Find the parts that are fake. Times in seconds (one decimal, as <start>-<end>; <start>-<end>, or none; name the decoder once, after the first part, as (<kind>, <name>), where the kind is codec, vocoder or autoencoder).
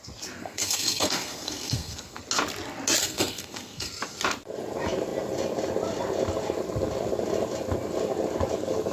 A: 0.4-2.2 (codec, SNAC); 3.0-3.9